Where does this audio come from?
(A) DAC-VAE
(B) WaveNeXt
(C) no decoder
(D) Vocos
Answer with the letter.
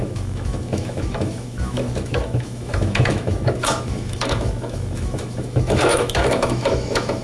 A